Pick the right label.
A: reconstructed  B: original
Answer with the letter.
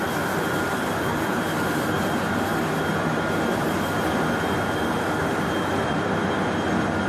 A